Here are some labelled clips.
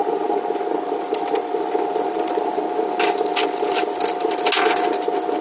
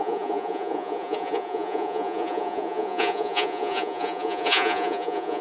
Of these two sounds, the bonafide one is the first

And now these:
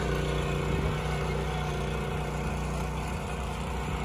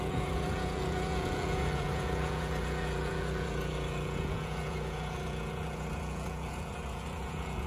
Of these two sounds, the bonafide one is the first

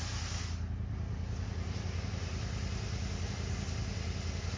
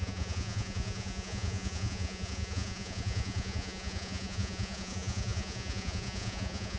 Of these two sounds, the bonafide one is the first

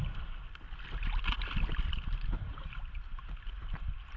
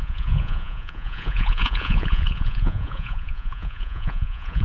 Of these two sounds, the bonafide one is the first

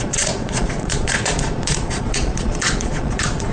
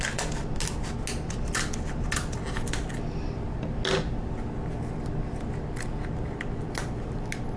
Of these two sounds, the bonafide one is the second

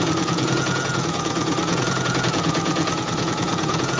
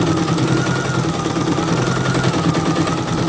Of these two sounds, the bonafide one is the second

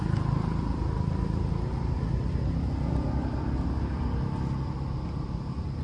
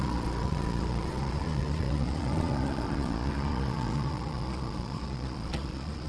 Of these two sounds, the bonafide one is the first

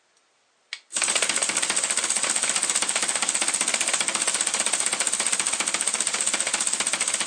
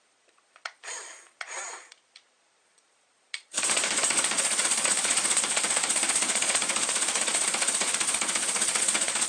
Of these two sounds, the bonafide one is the first